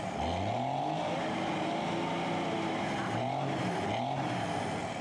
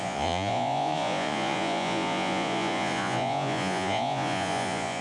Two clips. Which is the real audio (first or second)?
first